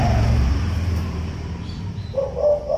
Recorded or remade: remade